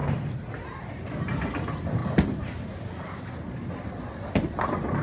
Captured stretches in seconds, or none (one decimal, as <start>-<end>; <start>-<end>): 0.0-5.0